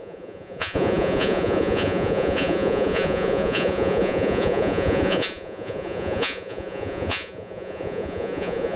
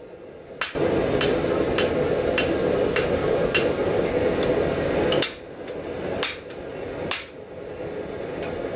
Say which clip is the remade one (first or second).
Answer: first